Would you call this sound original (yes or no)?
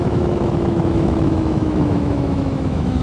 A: no